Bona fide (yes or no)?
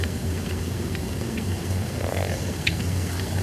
no